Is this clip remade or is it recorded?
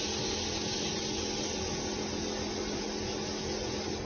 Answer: recorded